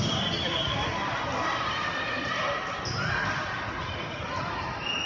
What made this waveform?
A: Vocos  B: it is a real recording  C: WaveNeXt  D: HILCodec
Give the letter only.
B